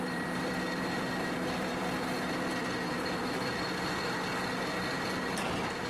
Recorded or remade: remade